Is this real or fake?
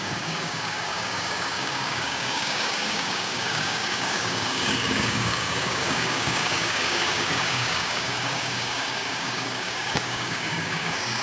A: fake